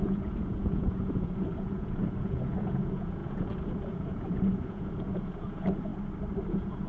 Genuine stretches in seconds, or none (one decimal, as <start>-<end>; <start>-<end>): 5.9-6.5